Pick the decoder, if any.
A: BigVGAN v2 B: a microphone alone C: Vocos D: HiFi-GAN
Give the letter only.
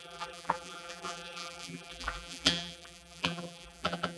A